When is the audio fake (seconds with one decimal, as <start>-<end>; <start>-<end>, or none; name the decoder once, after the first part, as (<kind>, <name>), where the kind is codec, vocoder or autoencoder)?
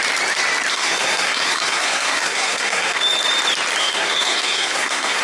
0.7-3.0 (codec, SNAC); 3.8-5.2